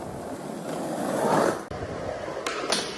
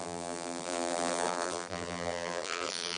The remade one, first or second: second